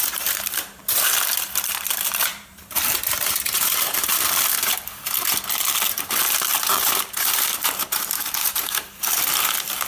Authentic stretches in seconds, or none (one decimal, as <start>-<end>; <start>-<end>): 0.8-2.3; 4.2-6.5; 9.3-9.9